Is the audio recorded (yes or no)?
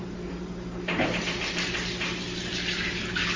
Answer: yes